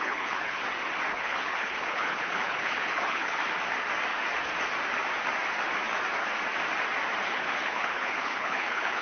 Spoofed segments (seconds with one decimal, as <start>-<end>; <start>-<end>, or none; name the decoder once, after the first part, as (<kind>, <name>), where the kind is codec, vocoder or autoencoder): 0.0-0.6 (codec, HILCodec); 1.1-3.4; 7.2-9.0